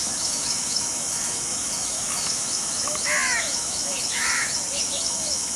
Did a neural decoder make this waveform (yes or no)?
yes